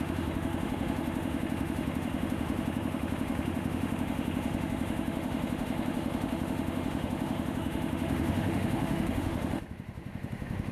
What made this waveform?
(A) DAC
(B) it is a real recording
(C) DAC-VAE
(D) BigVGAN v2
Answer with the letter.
C